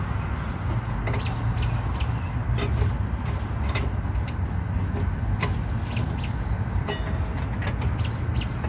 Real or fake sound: real